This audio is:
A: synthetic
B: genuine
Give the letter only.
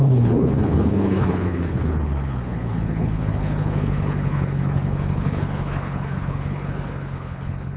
A